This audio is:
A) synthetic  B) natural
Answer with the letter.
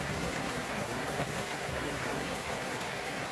A